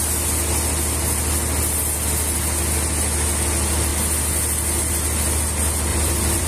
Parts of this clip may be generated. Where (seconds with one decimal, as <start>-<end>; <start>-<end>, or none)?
5.9-6.5